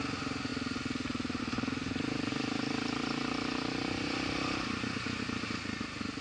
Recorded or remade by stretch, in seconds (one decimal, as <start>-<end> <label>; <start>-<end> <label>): 0.0-2.3 recorded; 2.3-5.2 remade; 5.2-6.2 recorded